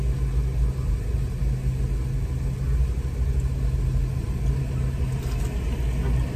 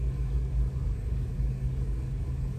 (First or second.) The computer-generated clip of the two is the second